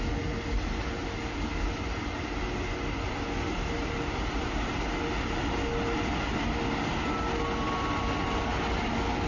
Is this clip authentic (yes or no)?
yes